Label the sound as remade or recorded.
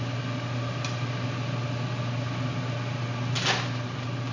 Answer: recorded